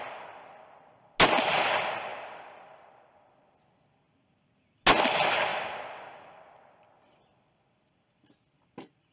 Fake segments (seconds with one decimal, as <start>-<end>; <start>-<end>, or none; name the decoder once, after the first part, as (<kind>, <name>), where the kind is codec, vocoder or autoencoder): 2.1-3.7 (vocoder, BigVGAN v2); 5.5-6.7